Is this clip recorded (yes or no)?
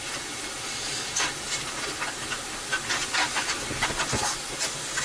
no